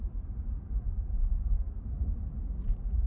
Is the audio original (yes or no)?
yes